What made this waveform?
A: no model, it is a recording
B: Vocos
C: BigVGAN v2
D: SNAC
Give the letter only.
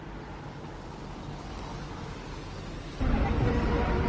A